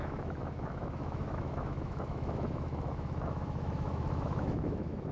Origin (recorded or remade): remade